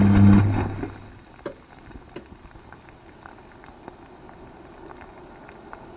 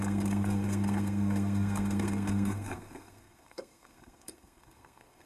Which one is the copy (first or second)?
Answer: second